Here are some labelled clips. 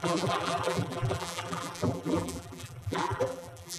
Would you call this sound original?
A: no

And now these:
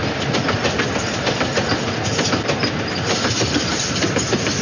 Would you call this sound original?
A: yes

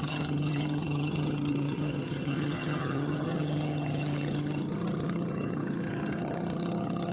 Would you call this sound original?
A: no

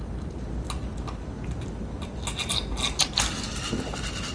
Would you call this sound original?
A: yes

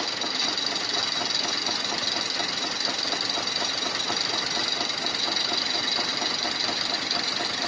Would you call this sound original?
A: yes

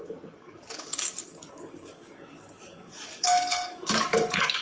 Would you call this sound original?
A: no